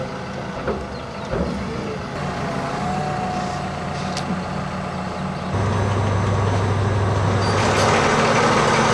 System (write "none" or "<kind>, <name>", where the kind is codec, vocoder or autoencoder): none